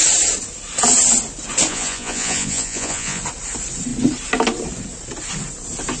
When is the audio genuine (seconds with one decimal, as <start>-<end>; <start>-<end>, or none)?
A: 0.0-1.7; 3.2-6.0